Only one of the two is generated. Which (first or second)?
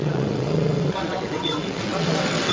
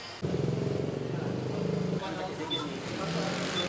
first